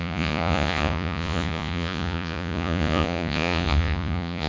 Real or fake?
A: fake